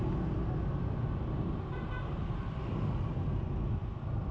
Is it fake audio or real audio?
real